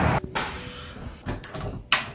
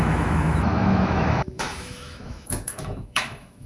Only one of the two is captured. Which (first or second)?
first